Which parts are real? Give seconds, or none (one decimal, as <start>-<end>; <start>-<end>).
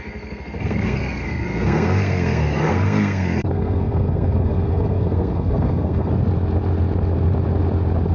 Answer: 6.1-8.1